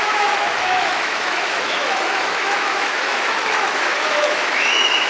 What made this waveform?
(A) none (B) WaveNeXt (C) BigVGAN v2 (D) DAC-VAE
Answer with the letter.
D